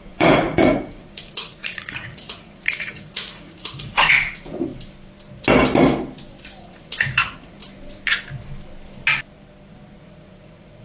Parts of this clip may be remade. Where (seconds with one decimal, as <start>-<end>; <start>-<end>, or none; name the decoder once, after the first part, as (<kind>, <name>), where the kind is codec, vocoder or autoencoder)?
0.0-4.7 (vocoder, Vocos); 6.6-7.6; 10.0-10.8